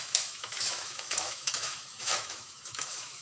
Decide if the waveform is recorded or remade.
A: remade